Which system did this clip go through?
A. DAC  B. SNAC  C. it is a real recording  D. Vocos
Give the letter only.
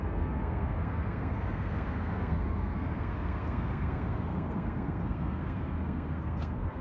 B